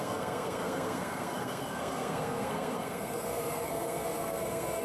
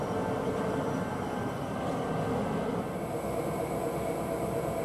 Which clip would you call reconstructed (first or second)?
first